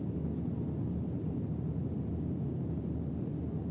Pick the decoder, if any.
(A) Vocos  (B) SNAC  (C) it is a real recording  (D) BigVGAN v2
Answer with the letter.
C